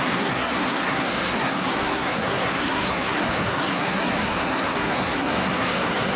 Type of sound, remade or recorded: remade